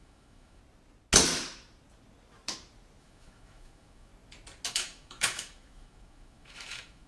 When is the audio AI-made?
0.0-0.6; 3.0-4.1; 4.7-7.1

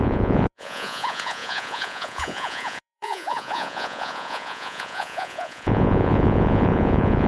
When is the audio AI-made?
0.0-7.3

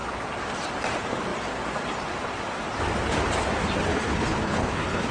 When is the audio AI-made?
3.9-5.1

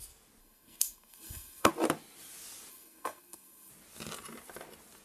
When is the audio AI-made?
0.4-1.7; 2.7-3.7

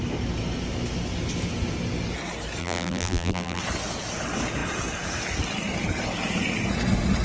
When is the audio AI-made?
2.6-3.6

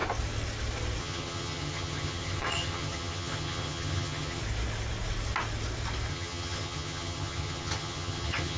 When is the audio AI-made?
1.0-4.4; 6.1-8.6

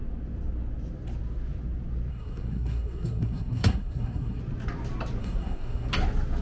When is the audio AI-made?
2.1-4.4; 5.2-5.9